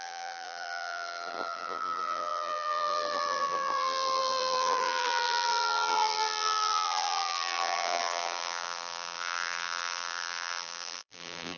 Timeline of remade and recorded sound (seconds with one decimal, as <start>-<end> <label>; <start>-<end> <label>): 0.0-11.6 remade